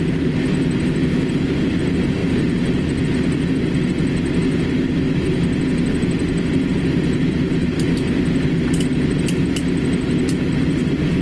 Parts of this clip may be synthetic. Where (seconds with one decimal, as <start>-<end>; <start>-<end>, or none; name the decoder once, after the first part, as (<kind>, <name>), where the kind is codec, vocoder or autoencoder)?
none